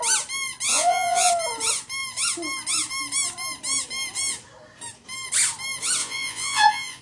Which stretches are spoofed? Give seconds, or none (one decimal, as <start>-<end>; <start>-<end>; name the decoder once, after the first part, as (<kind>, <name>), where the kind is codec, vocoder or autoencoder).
0.7-1.3 (vocoder, Vocos); 6.0-7.0